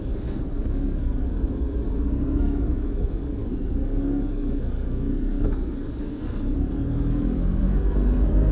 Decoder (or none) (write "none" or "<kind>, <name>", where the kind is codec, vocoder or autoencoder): codec, SNAC